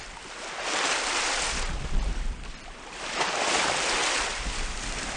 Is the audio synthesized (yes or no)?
no